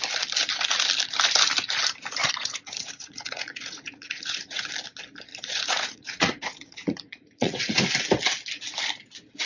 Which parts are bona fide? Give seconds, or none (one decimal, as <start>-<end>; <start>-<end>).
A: 0.0-2.2; 4.7-5.3; 7.8-9.5